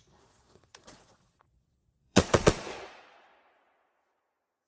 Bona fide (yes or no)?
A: no